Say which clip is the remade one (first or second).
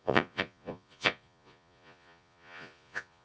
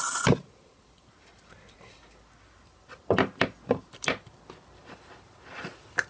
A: first